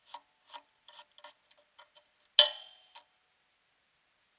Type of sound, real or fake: real